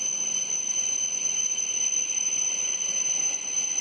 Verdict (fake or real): fake